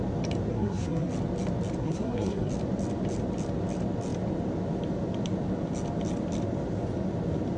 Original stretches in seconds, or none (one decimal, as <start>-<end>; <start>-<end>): 0.0-0.5; 1.1-1.8; 2.5-7.6